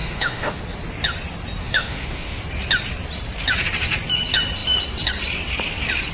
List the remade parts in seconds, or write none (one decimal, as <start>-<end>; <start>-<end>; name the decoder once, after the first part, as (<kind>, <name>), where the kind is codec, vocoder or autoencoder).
0.0-0.6 (autoencoder, DAC-VAE); 1.6-2.4